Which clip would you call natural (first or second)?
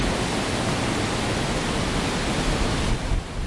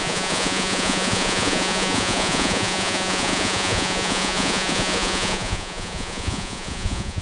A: first